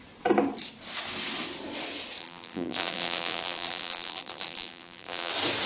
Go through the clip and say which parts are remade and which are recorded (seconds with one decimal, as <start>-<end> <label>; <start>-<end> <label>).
0.0-2.2 recorded; 2.2-5.3 remade; 5.3-5.7 recorded